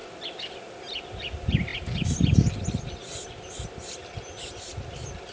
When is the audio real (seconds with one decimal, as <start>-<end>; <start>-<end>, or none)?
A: 1.0-5.3